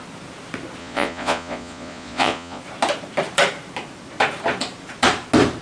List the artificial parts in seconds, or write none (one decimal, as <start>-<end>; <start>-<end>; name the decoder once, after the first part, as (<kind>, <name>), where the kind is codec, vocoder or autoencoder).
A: 0.8-2.6 (vocoder, Vocos)